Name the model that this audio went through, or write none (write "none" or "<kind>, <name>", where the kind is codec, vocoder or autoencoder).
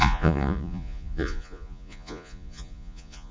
vocoder, Vocos